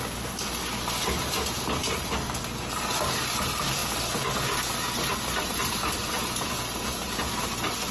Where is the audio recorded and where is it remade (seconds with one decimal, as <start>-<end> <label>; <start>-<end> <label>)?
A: 0.0-6.0 recorded; 6.0-7.3 remade; 7.3-7.9 recorded